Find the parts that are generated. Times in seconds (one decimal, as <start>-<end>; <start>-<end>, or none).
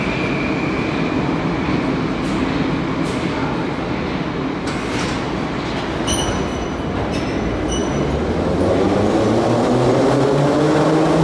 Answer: none